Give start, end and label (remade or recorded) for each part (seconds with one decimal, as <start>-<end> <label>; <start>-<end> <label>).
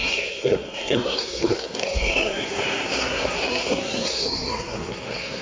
0.0-5.4 remade